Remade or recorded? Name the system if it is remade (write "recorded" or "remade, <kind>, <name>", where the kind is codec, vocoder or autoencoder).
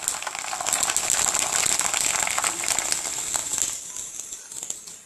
recorded